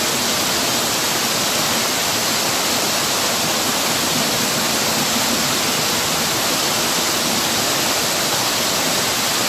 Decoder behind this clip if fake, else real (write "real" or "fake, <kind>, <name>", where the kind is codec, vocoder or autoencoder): real